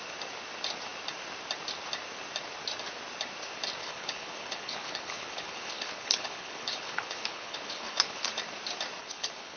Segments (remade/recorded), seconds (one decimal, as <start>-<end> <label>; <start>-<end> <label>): 0.0-3.8 recorded; 3.8-8.3 remade; 8.3-9.0 recorded; 9.0-9.6 remade